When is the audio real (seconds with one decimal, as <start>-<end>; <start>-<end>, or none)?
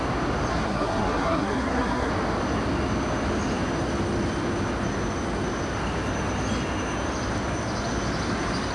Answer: 0.0-0.5; 2.1-8.7